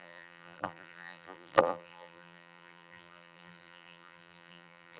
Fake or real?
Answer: fake